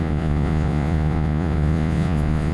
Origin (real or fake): fake